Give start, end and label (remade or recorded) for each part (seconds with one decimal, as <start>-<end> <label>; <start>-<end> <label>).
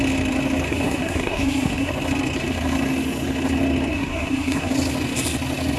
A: 0.0-0.7 recorded; 0.7-1.9 remade; 1.9-3.9 recorded; 3.9-4.7 remade; 4.7-5.8 recorded